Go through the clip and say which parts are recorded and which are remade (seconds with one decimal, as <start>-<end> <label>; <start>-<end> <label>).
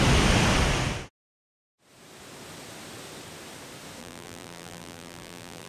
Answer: 0.0-4.0 recorded; 4.0-5.7 remade